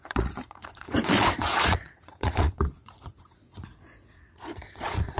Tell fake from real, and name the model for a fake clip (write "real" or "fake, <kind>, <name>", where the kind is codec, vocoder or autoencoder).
fake, vocoder, Vocos